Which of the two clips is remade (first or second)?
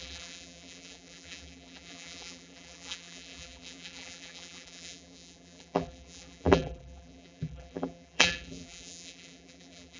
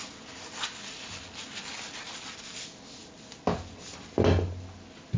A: first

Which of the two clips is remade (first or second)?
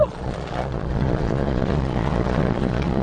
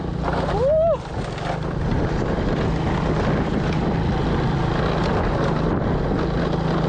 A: first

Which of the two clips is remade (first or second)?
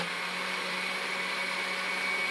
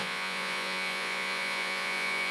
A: second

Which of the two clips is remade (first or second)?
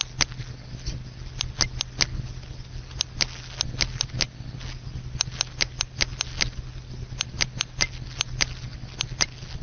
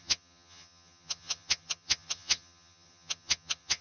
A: second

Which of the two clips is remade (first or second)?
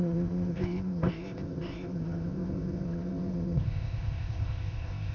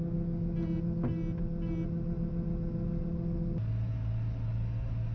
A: first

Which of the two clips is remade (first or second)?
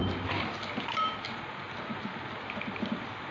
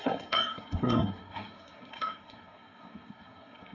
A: second